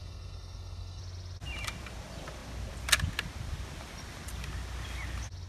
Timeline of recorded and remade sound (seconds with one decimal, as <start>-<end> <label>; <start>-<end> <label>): 0.0-1.0 remade; 1.0-5.5 recorded